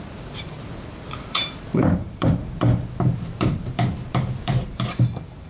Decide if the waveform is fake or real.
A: fake